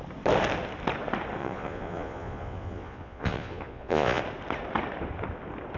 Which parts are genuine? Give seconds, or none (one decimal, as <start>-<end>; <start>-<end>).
0.0-1.4; 4.2-5.8